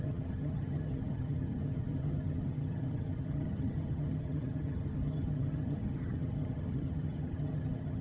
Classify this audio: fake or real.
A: fake